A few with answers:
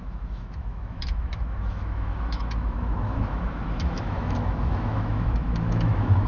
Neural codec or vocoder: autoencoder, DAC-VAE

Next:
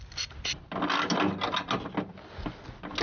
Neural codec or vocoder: none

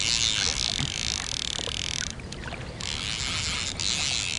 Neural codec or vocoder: none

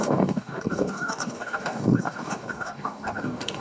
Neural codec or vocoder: codec, DAC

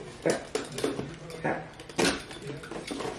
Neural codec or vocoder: none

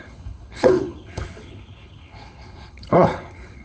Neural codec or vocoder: codec, HILCodec